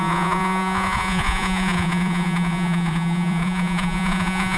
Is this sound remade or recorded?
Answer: remade